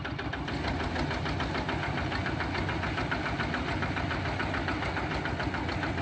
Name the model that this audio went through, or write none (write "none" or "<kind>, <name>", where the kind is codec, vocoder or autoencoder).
none